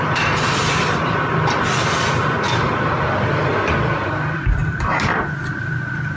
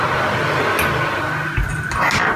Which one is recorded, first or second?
second